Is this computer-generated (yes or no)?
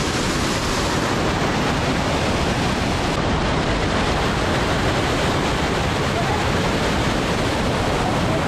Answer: no